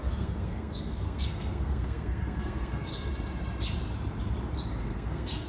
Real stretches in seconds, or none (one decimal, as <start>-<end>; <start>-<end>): 2.9-4.8